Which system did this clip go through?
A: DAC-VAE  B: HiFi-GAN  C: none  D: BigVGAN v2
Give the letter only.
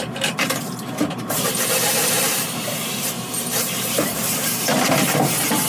D